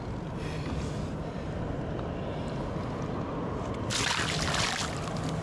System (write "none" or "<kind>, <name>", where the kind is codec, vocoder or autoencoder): none